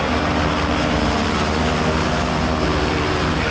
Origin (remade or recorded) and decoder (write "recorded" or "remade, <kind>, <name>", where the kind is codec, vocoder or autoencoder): recorded